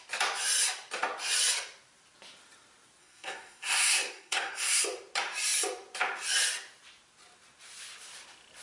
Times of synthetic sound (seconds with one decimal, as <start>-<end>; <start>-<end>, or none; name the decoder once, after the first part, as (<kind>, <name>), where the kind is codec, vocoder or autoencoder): 3.0-4.8 (codec, SNAC)